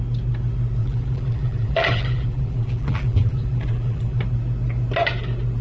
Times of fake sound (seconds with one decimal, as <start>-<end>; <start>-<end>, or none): 0.8-4.2